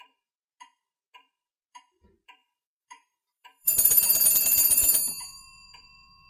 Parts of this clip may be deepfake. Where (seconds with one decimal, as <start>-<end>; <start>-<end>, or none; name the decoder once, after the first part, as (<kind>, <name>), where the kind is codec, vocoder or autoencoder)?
2.4-6.3 (vocoder, BigVGAN v2)